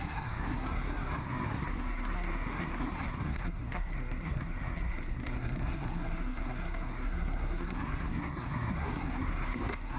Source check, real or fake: fake